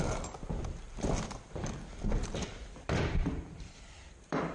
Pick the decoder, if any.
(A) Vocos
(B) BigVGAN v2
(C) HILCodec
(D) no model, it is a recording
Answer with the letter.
B